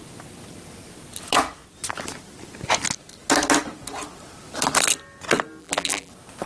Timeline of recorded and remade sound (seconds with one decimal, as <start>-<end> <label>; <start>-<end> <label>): 0.0-5.6 recorded; 5.6-6.1 remade; 6.1-6.5 recorded